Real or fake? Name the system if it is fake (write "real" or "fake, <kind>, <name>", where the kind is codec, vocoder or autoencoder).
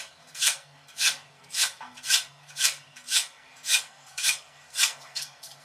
fake, codec, SNAC